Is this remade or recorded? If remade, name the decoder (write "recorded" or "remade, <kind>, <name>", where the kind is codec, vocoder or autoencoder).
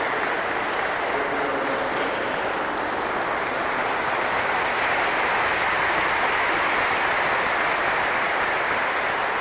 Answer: recorded